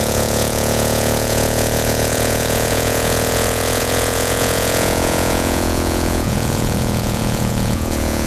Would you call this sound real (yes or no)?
no